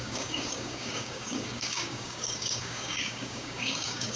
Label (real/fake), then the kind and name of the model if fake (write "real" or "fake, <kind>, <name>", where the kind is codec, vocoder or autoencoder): fake, codec, DAC